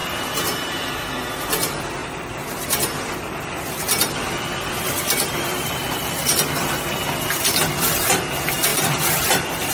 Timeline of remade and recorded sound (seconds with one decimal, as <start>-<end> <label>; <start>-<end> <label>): 0.0-2.0 recorded; 2.0-6.7 remade; 6.7-8.7 recorded; 8.7-9.7 remade